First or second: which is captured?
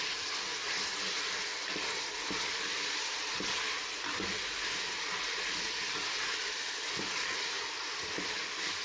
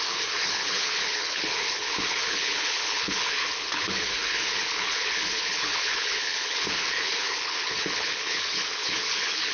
first